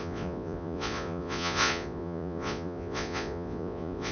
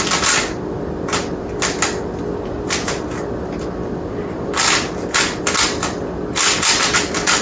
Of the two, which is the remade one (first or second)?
first